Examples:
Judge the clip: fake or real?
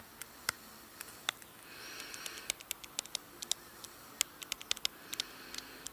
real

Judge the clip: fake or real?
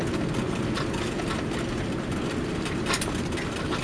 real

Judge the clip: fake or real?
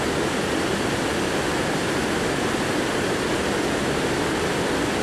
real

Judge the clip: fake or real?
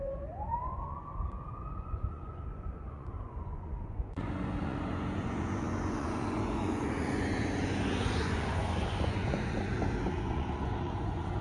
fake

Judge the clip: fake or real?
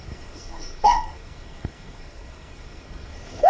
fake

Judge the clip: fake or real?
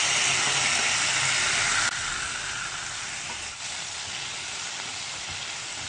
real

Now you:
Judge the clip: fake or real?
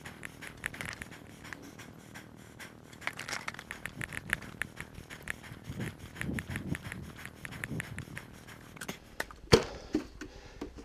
real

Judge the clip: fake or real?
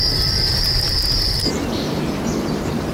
fake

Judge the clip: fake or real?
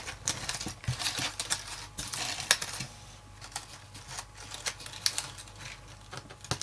real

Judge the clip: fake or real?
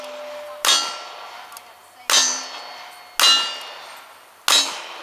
real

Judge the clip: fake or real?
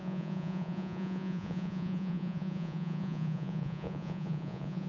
fake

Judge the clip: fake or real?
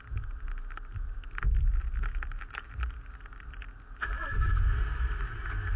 real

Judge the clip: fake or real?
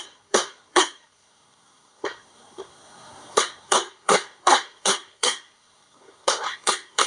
fake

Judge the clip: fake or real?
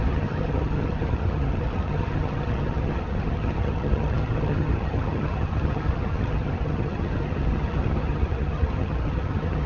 fake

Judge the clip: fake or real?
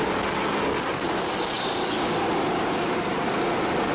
real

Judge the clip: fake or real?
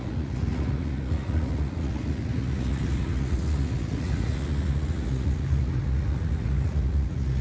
fake